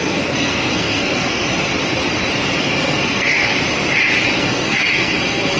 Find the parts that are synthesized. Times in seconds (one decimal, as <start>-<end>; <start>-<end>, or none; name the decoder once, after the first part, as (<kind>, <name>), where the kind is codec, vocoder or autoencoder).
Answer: 0.0-1.5 (codec, SNAC); 2.6-3.5; 4.4-5.6